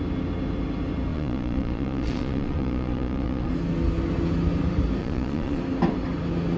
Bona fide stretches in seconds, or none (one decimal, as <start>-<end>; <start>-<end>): 0.0-1.1; 3.5-5.0; 5.6-6.6